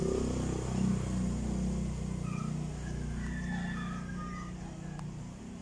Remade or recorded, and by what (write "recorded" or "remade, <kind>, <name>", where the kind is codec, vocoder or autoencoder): recorded